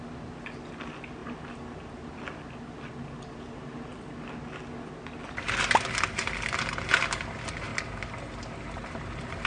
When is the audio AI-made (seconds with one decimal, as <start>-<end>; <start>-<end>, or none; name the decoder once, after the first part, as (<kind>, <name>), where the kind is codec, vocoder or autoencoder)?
none